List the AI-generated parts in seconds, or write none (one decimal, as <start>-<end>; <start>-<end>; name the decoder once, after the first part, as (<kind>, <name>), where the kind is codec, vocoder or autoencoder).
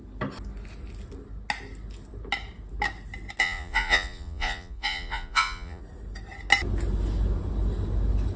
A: 3.4-5.8 (vocoder, Vocos)